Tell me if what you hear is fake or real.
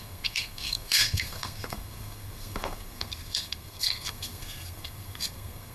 fake